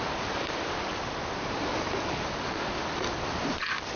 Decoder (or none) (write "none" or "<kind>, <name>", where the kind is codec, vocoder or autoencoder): none